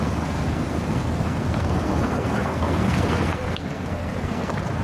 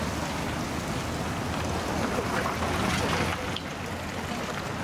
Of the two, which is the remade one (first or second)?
first